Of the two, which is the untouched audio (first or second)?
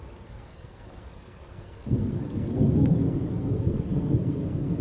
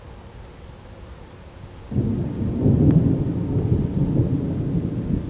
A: second